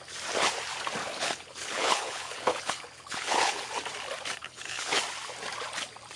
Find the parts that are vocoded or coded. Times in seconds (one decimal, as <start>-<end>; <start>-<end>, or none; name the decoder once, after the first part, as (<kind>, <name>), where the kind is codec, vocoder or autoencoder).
1.0-3.7 (codec, HILCodec); 4.4-5.0